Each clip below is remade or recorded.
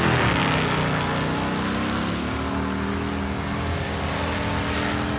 recorded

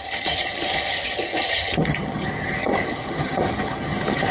remade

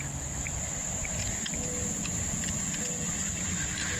recorded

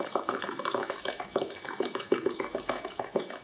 remade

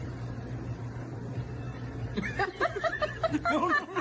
remade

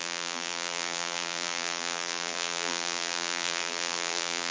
remade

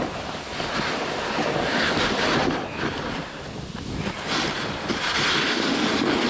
recorded